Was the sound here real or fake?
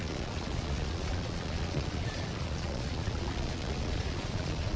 fake